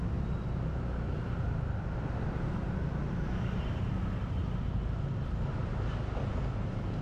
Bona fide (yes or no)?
yes